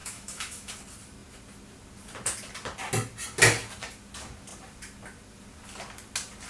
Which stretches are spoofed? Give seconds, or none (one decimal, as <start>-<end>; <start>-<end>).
0.0-0.7